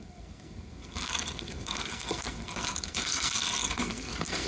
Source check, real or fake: fake